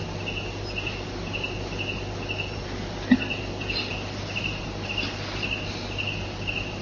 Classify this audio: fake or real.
real